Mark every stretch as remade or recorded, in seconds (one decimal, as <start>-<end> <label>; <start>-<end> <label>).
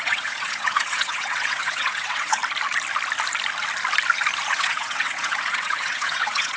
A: 0.0-2.4 remade; 2.4-4.5 recorded; 4.5-6.6 remade